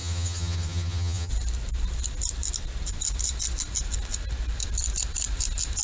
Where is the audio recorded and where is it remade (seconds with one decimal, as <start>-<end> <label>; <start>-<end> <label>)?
0.0-1.3 remade; 1.3-5.8 recorded